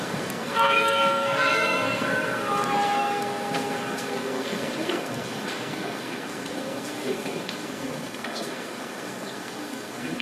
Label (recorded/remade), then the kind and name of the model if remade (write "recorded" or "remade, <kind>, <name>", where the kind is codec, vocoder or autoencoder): remade, codec, SNAC